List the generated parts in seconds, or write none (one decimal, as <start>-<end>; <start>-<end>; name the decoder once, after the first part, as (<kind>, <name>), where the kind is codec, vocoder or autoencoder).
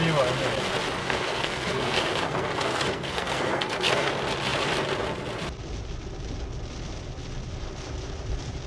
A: 1.0-4.1 (codec, SNAC)